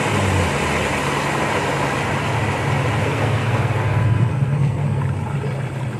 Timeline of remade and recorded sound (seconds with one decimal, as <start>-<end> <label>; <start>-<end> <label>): 0.0-3.0 recorded; 3.0-5.0 remade; 5.0-6.0 recorded